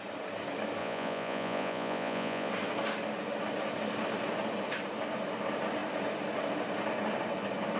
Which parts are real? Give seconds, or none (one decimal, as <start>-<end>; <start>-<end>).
0.0-0.8; 2.5-7.8